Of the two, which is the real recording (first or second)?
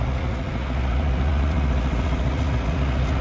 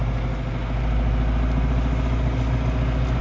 second